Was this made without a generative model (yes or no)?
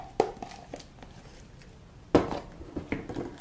yes